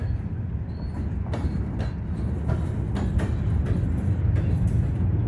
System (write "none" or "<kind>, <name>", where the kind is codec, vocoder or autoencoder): none